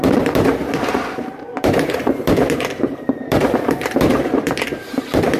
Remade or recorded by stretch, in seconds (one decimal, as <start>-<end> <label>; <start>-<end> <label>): 0.0-5.4 remade